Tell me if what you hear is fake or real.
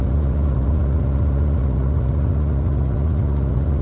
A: fake